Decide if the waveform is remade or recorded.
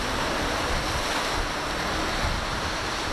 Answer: recorded